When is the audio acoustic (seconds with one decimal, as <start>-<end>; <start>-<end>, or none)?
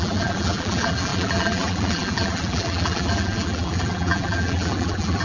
none